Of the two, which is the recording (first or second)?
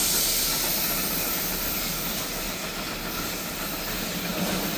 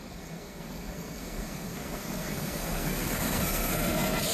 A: first